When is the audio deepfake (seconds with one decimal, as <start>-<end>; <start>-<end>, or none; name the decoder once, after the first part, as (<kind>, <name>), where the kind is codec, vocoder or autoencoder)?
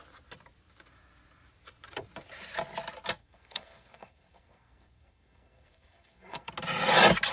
3.2-6.5 (codec, SNAC)